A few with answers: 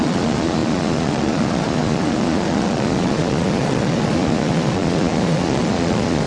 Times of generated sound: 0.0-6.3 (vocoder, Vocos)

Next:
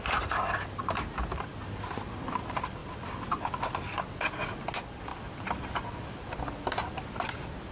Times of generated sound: none